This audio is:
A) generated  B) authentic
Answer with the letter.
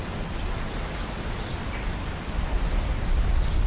B